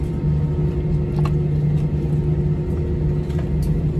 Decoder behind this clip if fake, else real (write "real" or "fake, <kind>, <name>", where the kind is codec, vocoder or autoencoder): real